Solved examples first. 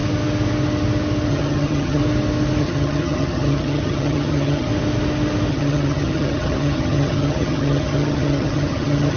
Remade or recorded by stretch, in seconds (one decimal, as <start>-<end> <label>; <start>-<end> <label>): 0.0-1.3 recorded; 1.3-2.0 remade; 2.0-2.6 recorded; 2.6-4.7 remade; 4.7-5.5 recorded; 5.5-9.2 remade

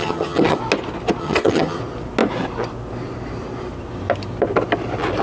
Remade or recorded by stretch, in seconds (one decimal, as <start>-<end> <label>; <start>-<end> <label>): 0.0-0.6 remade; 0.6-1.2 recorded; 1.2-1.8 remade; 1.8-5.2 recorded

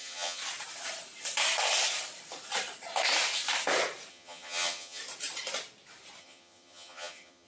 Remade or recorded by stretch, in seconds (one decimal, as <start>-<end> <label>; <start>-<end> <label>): 0.0-0.4 remade; 0.4-4.1 recorded; 4.1-5.0 remade; 5.0-6.2 recorded; 6.2-7.5 remade